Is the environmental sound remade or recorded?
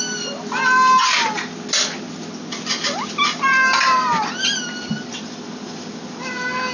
recorded